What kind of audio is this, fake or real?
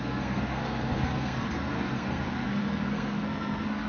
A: fake